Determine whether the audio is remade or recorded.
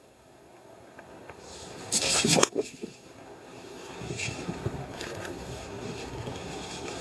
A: remade